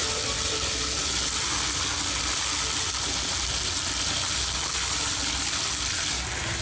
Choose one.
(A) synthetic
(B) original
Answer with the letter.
B